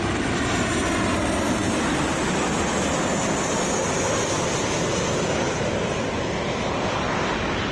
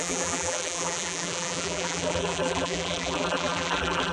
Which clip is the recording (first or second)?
first